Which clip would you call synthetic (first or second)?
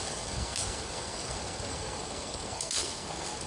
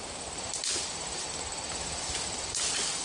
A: first